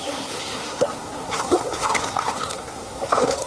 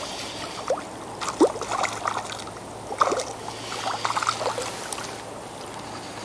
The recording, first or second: second